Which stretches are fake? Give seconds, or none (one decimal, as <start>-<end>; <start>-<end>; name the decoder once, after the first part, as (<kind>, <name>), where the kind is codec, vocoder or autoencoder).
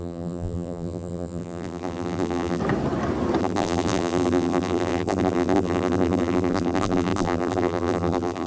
0.0-2.6 (vocoder, BigVGAN v2); 3.4-8.5